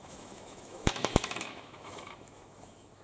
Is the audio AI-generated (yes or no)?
yes